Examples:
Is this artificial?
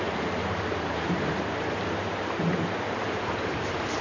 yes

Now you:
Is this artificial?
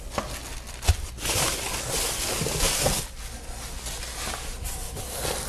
no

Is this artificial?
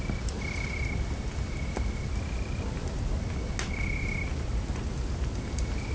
no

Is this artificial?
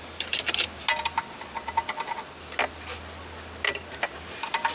no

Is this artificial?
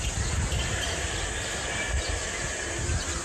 no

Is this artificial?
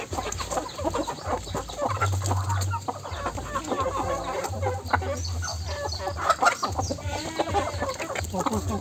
no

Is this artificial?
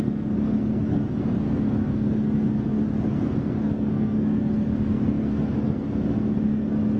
yes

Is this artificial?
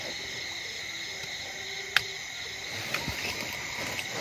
no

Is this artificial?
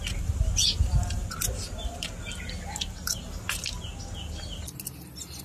no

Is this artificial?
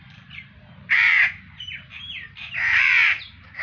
yes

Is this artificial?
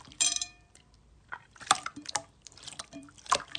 yes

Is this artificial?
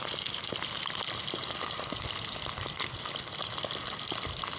no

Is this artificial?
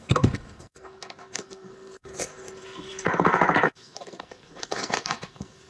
yes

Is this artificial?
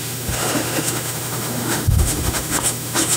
yes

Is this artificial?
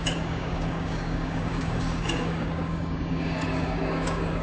yes